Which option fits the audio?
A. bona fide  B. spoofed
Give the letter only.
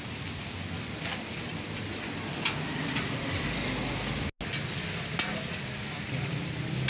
A